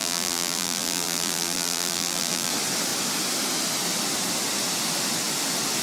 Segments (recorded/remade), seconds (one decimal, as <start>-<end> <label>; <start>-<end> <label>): 0.0-2.5 remade; 2.5-5.8 recorded

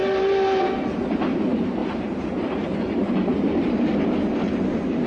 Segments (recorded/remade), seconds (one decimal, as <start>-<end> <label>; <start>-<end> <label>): 0.0-0.6 remade; 0.6-1.8 recorded; 1.8-3.7 remade; 3.7-5.1 recorded

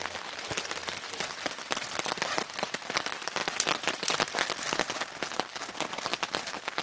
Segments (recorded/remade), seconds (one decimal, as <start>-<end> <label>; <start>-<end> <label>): 0.0-0.8 remade; 0.8-1.8 recorded; 1.8-3.4 remade; 3.4-5.6 recorded; 5.6-6.8 remade

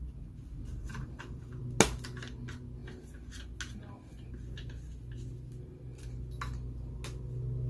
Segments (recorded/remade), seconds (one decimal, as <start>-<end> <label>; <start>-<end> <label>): 0.0-0.8 recorded; 0.8-1.6 remade; 1.6-7.7 recorded

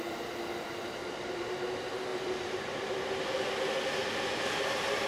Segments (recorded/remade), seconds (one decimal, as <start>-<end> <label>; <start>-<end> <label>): 0.0-1.0 recorded; 1.0-1.7 remade; 1.7-2.1 recorded; 2.1-3.0 remade; 3.0-5.1 recorded

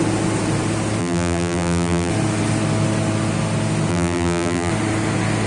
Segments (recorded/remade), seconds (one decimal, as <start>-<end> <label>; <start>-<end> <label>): 0.0-1.0 recorded; 1.0-2.1 remade; 2.1-3.9 recorded; 3.9-4.7 remade; 4.7-5.5 recorded

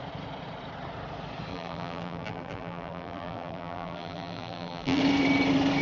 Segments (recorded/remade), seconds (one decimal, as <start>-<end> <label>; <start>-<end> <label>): 0.0-1.5 recorded; 1.5-5.0 remade; 5.0-5.8 recorded

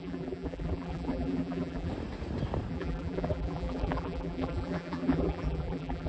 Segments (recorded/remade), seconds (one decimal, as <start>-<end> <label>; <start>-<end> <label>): 0.0-1.9 remade; 1.9-2.7 recorded; 2.7-6.1 remade